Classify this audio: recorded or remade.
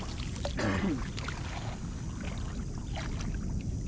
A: recorded